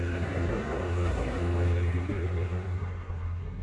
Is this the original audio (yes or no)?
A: no